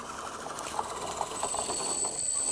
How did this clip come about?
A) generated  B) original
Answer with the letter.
B